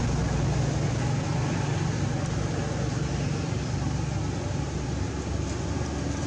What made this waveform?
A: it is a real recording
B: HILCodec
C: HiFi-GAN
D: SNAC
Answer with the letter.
A